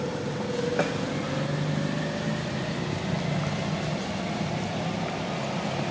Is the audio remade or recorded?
recorded